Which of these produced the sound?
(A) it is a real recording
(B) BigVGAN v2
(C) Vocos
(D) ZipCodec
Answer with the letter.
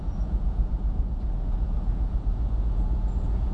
C